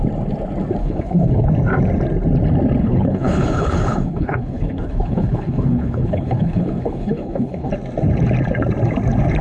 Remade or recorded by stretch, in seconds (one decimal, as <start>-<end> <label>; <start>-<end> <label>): 0.0-0.8 recorded; 0.8-1.5 remade; 1.5-2.8 recorded; 2.8-7.7 remade; 7.7-9.4 recorded